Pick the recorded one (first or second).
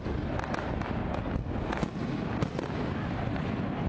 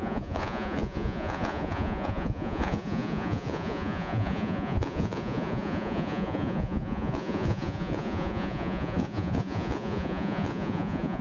first